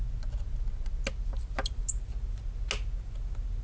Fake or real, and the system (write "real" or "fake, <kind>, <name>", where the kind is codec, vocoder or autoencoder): real